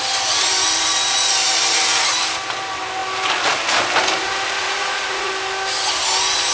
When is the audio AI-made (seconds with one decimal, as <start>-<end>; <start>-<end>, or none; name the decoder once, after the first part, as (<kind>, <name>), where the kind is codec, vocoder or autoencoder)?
4.6-5.3 (vocoder, Vocos)